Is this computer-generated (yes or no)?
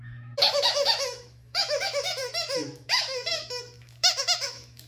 yes